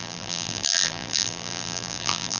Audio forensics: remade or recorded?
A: remade